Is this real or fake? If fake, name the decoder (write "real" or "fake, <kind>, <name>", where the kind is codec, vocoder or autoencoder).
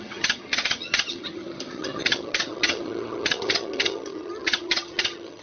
fake, vocoder, HiFi-GAN